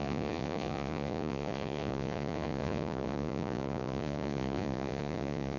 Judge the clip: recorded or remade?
remade